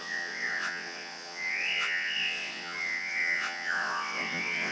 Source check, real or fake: fake